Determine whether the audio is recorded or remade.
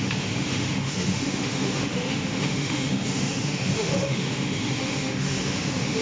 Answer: remade